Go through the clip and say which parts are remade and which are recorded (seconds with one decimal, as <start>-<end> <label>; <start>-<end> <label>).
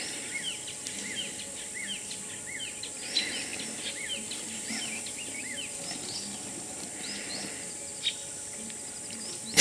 0.0-9.6 recorded